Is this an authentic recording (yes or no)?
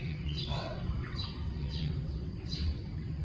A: no